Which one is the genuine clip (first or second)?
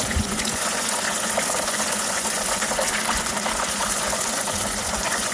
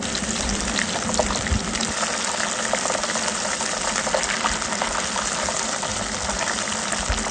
second